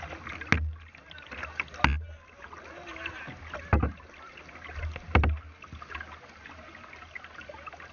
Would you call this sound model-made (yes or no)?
no